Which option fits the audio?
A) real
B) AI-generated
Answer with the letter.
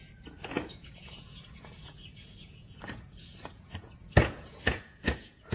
B